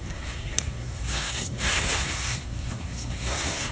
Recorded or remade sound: remade